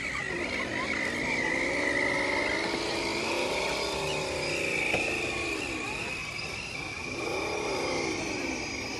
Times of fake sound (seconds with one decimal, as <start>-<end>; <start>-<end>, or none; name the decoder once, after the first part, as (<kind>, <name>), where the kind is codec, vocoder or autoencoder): none